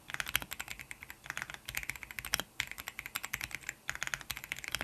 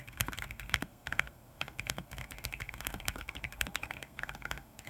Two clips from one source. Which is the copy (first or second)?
second